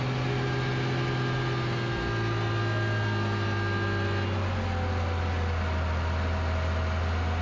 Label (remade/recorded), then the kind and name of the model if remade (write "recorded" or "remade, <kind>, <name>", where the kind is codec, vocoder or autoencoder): recorded